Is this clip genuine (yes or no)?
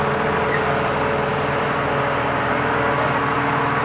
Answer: yes